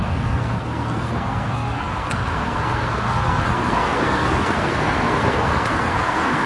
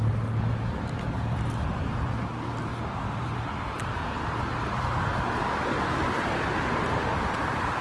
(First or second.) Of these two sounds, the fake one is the first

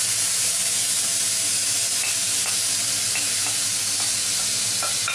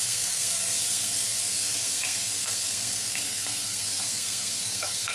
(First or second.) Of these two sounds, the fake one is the second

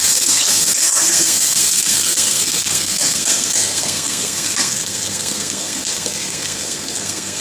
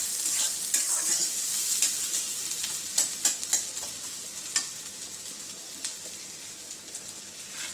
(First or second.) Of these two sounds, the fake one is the first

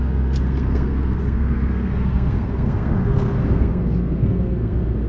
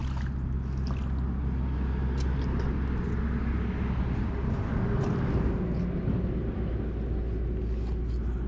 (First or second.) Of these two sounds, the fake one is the first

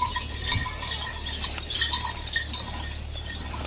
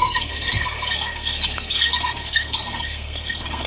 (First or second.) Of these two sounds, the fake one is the second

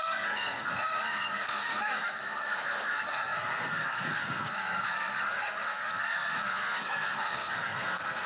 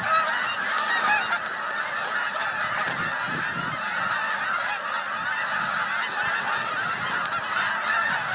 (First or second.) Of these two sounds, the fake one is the first